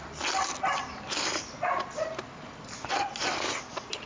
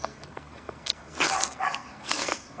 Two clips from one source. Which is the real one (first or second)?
first